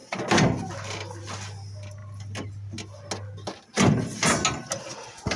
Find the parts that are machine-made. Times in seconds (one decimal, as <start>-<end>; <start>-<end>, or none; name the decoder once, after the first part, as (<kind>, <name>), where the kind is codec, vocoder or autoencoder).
none